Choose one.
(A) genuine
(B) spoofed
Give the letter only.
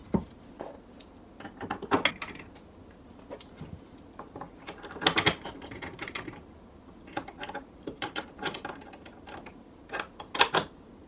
A